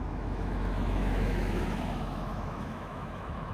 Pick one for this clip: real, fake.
fake